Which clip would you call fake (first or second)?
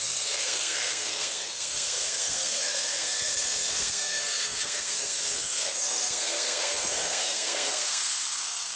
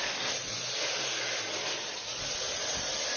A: first